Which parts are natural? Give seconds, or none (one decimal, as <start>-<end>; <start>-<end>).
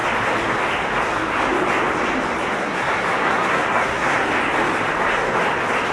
0.0-2.6; 4.3-5.9